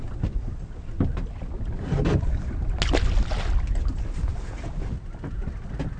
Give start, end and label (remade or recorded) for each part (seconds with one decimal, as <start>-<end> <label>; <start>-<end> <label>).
0.0-6.0 recorded